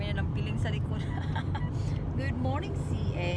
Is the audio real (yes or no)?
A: yes